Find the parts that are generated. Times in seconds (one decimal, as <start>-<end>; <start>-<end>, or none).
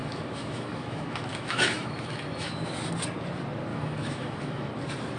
0.0-2.7; 3.7-4.7